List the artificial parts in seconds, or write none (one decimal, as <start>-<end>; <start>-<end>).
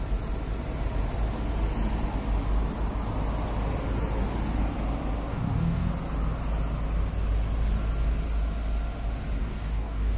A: 5.3-5.9; 9.4-10.2